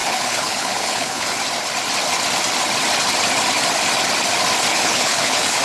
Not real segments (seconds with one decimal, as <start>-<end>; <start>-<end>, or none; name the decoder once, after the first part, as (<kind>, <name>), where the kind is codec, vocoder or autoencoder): 0.0-1.4 (codec, HILCodec); 4.7-5.6